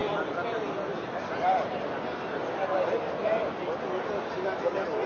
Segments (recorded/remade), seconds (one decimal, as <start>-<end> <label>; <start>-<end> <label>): 0.0-2.0 remade; 2.0-3.2 recorded; 3.2-4.6 remade; 4.6-5.1 recorded